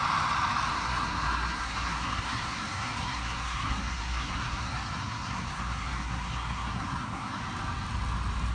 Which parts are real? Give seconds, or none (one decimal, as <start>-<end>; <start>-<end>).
0.0-0.7; 7.4-8.5